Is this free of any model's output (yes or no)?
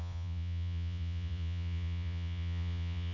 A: no